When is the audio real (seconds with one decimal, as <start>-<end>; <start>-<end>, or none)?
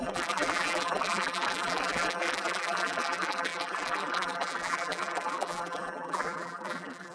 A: none